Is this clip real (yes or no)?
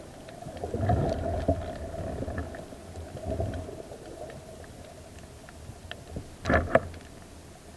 yes